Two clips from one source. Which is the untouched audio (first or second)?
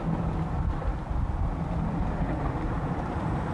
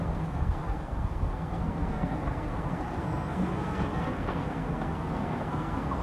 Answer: first